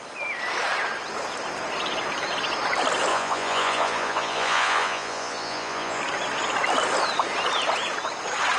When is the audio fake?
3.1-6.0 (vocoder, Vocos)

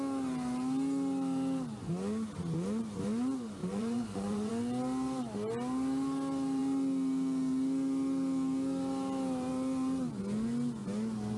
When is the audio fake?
3.6-4.5 (vocoder, Vocos)

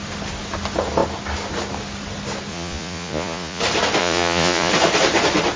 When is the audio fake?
2.5-3.6 (vocoder, Vocos); 4.0-4.7

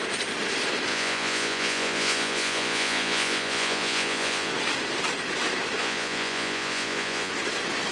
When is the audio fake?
0.9-4.5 (vocoder, Vocos); 5.8-7.3

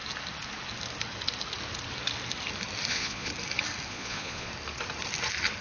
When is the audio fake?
2.9-3.3 (vocoder, Vocos); 3.9-4.5

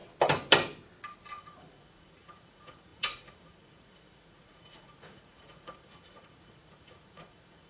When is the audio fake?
1.4-7.7 (vocoder, Vocos)

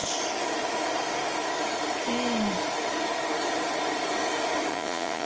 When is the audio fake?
4.7-5.3 (vocoder, Vocos)